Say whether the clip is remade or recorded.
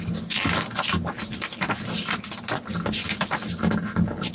recorded